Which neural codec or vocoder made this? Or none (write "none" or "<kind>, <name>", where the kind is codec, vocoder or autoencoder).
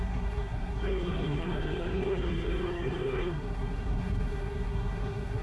codec, SNAC